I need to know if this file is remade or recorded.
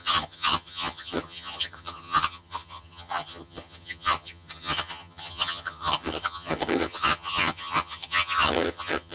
remade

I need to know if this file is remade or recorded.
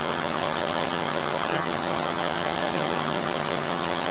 remade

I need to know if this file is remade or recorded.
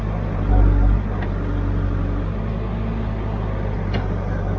recorded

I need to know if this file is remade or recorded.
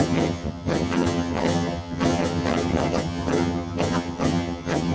remade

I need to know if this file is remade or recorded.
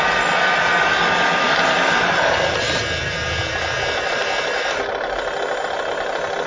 recorded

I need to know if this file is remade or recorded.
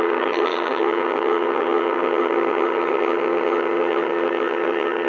remade